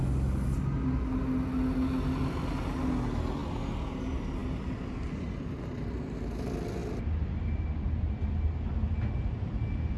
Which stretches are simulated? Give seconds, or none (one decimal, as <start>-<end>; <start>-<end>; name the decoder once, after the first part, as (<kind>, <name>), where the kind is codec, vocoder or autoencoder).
none